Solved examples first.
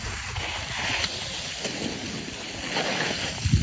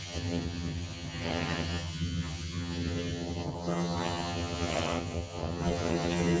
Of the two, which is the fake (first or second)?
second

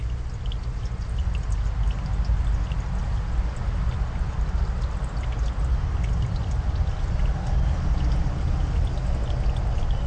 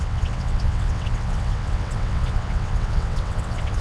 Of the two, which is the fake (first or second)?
second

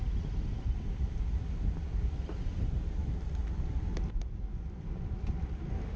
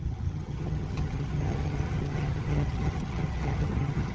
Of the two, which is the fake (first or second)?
second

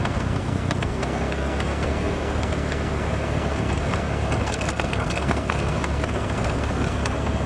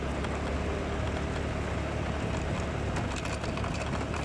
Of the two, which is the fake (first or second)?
first